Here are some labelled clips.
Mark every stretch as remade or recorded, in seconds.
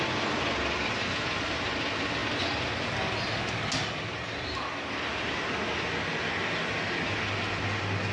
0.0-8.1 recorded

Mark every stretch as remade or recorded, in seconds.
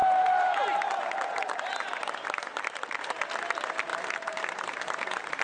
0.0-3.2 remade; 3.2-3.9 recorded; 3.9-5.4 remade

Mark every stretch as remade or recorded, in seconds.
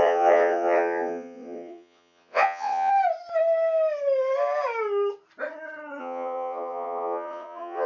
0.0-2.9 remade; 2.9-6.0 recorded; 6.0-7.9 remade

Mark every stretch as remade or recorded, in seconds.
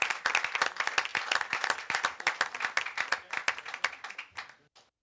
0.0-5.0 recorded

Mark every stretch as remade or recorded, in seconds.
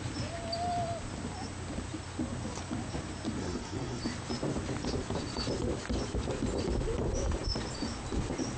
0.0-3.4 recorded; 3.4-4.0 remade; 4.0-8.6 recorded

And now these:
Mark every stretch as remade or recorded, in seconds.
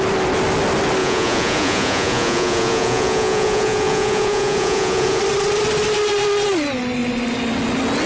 0.0-1.0 recorded; 1.0-5.2 remade; 5.2-8.1 recorded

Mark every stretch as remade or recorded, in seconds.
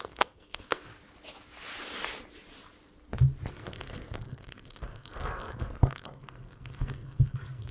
0.0-0.9 remade; 0.9-3.5 recorded; 3.5-7.7 remade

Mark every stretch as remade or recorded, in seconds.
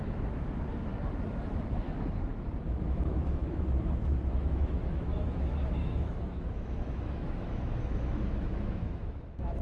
0.0-0.9 remade; 0.9-1.5 recorded; 1.5-9.6 remade